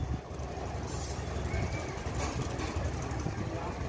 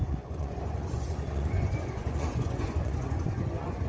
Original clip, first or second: first